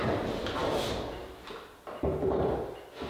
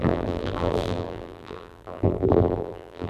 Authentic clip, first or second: first